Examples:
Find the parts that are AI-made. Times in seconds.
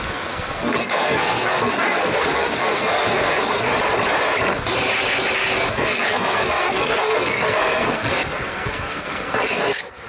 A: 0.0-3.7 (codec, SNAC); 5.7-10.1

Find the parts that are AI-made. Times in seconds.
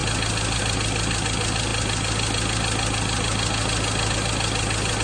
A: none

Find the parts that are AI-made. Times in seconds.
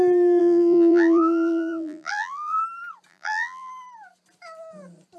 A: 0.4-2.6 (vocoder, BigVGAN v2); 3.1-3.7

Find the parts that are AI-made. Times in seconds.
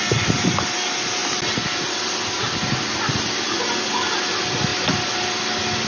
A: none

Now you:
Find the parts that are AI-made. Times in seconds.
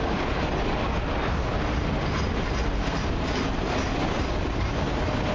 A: none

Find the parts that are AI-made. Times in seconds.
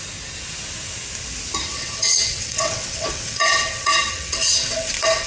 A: 1.7-5.3 (vocoder, WaveNeXt)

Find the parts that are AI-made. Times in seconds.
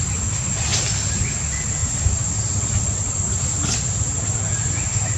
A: 1.8-5.2 (vocoder, BigVGAN v2)